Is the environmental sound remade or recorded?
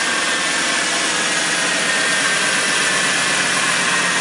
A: recorded